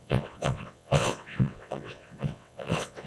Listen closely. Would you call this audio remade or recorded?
remade